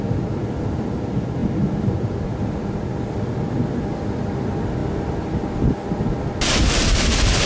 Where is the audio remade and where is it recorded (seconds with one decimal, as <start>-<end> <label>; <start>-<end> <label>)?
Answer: 0.0-7.5 recorded